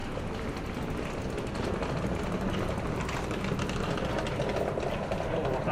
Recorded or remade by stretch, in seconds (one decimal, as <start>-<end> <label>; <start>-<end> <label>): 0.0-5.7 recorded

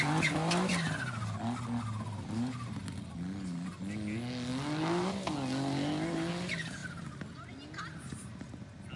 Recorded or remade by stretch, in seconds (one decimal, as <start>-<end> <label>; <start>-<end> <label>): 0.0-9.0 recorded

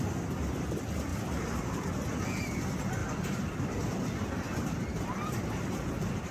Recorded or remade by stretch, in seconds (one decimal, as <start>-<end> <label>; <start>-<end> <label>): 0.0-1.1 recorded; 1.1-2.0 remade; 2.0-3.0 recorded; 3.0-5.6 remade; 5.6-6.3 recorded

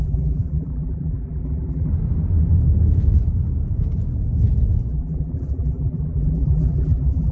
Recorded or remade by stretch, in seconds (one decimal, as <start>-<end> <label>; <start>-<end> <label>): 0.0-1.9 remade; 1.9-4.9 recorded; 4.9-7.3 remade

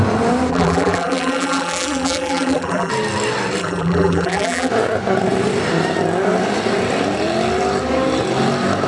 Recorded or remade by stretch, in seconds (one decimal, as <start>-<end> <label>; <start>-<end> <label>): 0.0-0.5 recorded; 0.5-2.9 remade; 2.9-3.6 recorded; 3.6-4.7 remade; 4.7-8.9 recorded

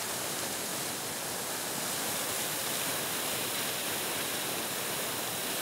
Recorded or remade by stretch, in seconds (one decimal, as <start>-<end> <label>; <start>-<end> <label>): 0.0-2.6 recorded; 2.6-5.6 remade

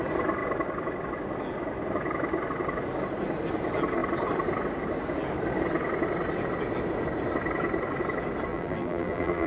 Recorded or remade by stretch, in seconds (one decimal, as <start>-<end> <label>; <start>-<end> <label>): 0.0-8.5 recorded; 8.5-9.5 remade

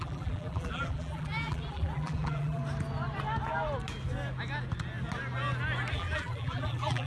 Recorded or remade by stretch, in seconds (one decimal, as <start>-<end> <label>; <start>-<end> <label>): 0.0-2.6 remade; 2.6-5.9 recorded; 5.9-7.1 remade